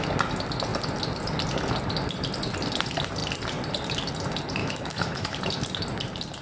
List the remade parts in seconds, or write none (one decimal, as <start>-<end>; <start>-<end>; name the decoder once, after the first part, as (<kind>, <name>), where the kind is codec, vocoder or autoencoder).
4.6-5.4 (autoencoder, DAC-VAE)